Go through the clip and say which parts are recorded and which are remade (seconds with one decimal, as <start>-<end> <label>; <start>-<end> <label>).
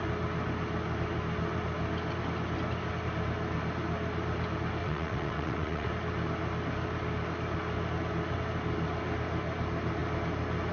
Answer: 0.0-4.8 recorded; 4.8-5.9 remade; 5.9-10.7 recorded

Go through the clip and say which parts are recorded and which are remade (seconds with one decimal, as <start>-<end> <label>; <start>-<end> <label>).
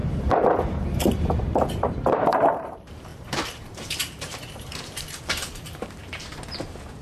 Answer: 0.0-6.3 remade; 6.3-7.0 recorded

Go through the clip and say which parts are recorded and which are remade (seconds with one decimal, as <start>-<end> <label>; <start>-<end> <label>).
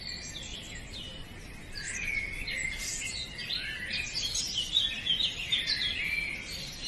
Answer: 0.0-0.5 recorded; 0.5-3.0 remade; 3.0-6.9 recorded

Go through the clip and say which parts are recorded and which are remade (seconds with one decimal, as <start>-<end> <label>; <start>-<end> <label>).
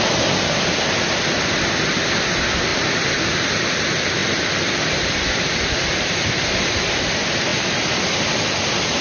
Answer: 0.0-4.2 remade; 4.2-5.8 recorded; 5.8-9.0 remade